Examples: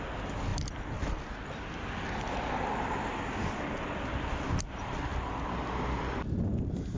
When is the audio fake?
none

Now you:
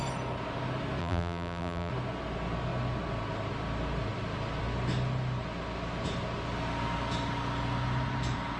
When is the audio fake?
1.0-1.9 (vocoder, BigVGAN v2)